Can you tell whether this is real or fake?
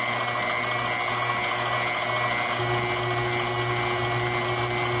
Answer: real